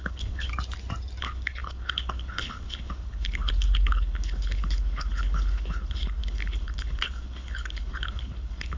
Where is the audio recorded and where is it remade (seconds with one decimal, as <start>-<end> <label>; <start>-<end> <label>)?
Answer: 0.0-0.5 remade; 0.5-1.2 recorded; 1.2-8.8 remade